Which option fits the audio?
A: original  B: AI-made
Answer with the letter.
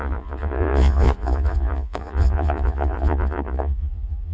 B